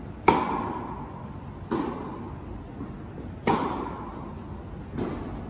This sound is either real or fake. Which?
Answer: real